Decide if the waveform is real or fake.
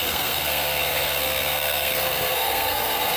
fake